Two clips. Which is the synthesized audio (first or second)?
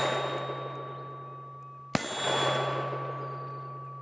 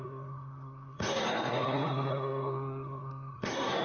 second